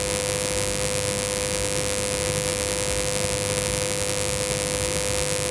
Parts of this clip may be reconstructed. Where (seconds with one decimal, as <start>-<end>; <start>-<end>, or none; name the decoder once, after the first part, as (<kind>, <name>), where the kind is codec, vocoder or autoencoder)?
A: none